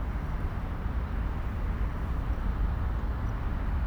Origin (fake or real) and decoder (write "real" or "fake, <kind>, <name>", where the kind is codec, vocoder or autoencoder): real